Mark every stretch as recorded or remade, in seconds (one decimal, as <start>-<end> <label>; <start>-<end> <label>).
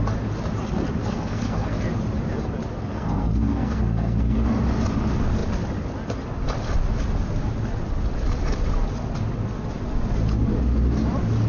0.0-1.0 recorded; 1.0-1.8 remade; 1.8-2.9 recorded; 2.9-4.6 remade; 4.6-11.5 recorded